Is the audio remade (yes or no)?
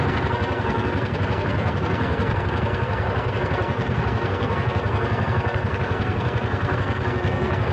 yes